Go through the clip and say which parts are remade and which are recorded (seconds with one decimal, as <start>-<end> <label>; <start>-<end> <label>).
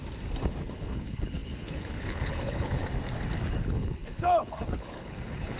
0.0-0.6 recorded; 0.6-2.8 remade; 2.8-3.6 recorded; 3.6-5.6 remade